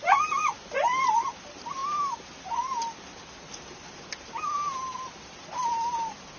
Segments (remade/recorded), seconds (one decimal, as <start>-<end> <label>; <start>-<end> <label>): 0.0-6.4 recorded